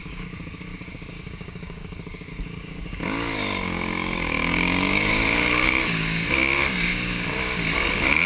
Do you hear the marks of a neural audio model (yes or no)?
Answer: yes